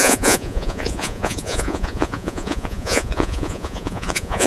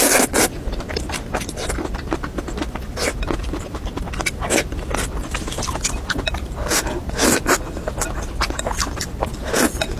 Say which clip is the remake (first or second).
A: first